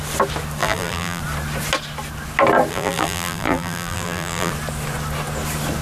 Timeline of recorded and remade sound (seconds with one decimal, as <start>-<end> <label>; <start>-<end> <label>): 0.0-0.6 recorded; 0.6-1.2 remade; 1.2-2.7 recorded; 2.7-4.5 remade; 4.5-5.8 recorded